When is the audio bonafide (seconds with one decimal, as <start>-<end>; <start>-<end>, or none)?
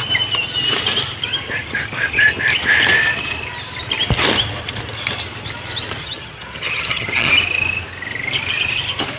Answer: 0.0-6.0; 7.3-9.2